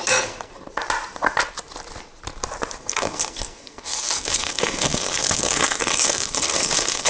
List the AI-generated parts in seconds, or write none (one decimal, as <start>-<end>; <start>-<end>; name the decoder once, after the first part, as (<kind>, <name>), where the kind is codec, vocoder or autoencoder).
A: 0.0-0.5 (codec, SNAC); 2.8-7.1